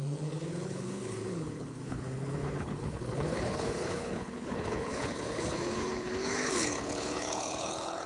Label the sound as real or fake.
fake